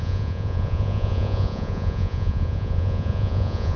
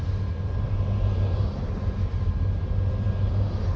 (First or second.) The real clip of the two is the second